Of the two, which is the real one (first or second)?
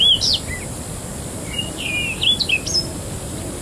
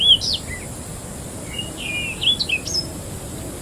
second